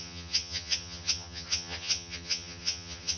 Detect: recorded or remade remade